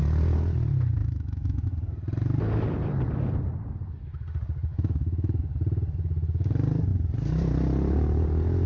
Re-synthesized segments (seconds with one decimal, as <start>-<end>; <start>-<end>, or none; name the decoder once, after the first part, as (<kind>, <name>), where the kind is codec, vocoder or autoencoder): 1.0-1.7 (autoencoder, DAC-VAE); 4.7-5.4